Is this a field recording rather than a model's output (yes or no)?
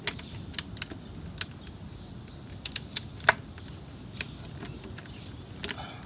yes